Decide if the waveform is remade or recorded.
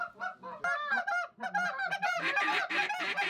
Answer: recorded